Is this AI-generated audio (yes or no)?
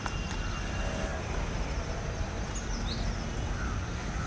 no